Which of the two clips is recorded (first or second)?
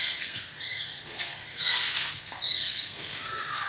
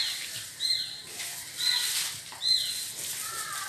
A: second